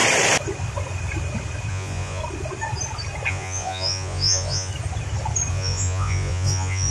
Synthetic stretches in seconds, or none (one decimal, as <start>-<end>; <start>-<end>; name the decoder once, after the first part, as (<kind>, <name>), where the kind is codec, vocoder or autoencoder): 1.7-2.2 (vocoder, Vocos); 3.3-4.7; 5.5-6.9